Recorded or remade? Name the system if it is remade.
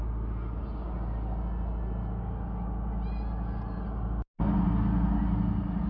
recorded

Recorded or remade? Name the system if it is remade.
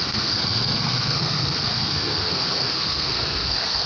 remade, codec, SNAC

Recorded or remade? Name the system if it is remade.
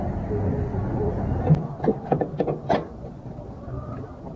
recorded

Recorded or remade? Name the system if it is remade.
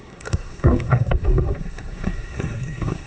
remade, codec, SNAC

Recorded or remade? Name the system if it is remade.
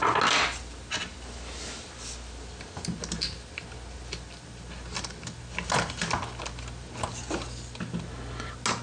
recorded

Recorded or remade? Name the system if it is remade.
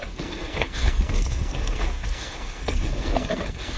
remade, codec, SNAC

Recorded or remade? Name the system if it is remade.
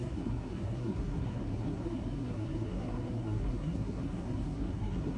remade, codec, SNAC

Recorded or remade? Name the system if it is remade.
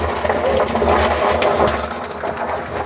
recorded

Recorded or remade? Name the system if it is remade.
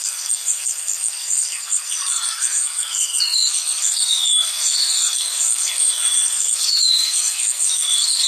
remade, codec, SNAC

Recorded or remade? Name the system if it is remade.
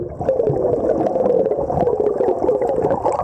recorded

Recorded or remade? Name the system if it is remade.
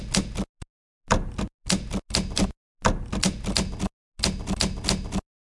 recorded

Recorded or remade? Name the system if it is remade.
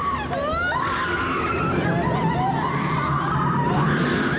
recorded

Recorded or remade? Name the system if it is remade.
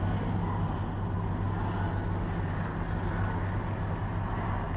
recorded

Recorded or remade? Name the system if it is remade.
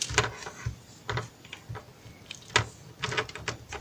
recorded